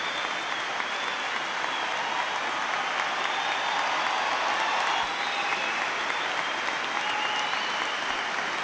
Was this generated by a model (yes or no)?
no